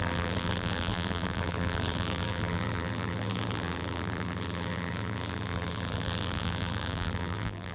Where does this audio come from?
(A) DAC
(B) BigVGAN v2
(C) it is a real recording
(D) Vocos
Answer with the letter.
B